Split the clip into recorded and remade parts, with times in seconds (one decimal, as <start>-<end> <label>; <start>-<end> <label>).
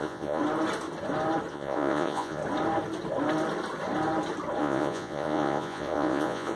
0.0-0.4 remade; 0.4-1.5 recorded; 1.5-2.4 remade; 2.4-4.6 recorded; 4.6-6.6 remade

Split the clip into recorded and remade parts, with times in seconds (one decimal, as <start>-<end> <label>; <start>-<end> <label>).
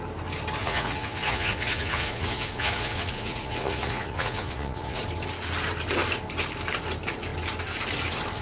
0.0-0.6 recorded; 0.6-5.0 remade; 5.0-8.4 recorded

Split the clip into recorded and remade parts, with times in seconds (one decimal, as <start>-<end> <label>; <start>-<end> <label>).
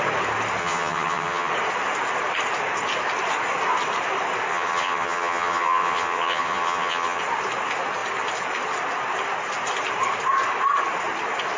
0.0-0.6 recorded; 0.6-1.5 remade; 1.5-4.5 recorded; 4.5-7.2 remade; 7.2-11.6 recorded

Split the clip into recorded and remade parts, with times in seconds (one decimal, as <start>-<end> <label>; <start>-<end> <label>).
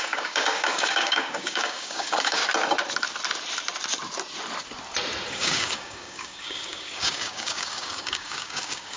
0.0-2.4 remade; 2.4-5.3 recorded; 5.3-9.0 remade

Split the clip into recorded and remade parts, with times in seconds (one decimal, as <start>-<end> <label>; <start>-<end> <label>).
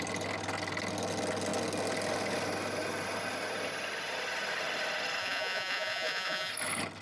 0.0-5.2 recorded; 5.2-6.5 remade; 6.5-7.0 recorded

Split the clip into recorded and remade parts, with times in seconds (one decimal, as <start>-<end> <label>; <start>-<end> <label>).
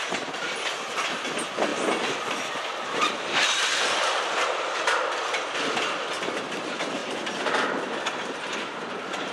0.0-1.7 recorded; 1.7-6.2 remade; 6.2-7.0 recorded; 7.0-7.7 remade; 7.7-9.3 recorded